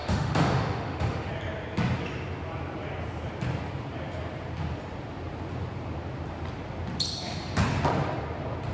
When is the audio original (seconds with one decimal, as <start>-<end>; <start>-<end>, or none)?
1.3-8.7